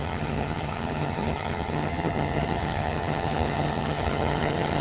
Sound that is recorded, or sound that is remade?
remade